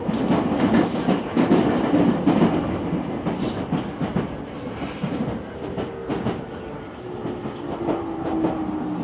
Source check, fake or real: real